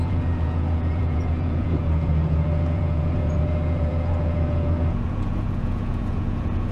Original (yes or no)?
no